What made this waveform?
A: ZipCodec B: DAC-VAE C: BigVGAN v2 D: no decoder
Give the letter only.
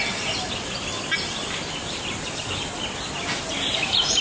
D